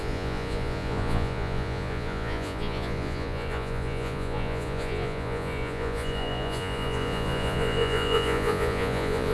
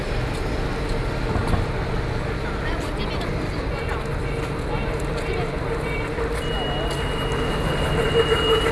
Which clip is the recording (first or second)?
second